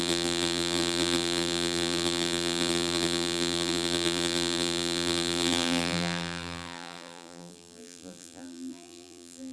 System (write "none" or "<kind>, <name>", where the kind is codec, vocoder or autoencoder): vocoder, BigVGAN v2